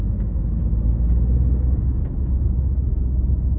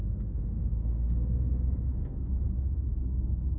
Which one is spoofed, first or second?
second